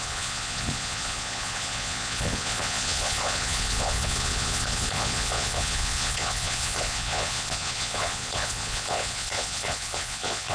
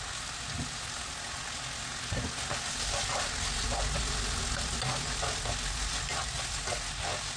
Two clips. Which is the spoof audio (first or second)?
first